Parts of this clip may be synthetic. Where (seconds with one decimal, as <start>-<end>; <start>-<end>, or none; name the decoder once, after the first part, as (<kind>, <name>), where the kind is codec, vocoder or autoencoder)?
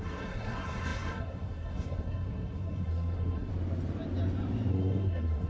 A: 0.0-3.5 (codec, SNAC); 4.7-5.5